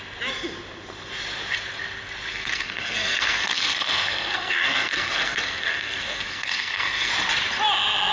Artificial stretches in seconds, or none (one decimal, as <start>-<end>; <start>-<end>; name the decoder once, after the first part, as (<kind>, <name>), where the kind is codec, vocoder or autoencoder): 2.3-7.1 (codec, SNAC)